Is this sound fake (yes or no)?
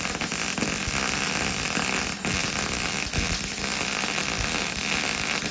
no